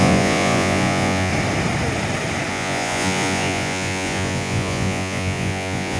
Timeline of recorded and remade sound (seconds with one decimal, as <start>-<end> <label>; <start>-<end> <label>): 0.0-1.3 remade; 1.3-2.5 recorded; 2.5-6.0 remade